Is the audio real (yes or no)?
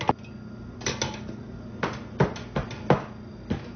yes